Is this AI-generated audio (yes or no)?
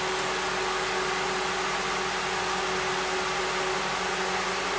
no